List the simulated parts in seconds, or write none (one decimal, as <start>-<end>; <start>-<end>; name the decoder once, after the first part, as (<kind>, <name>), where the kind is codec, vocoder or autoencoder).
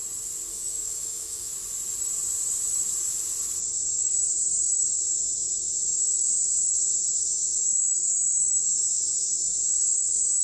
0.5-1.5 (autoencoder, DAC-VAE); 7.0-9.5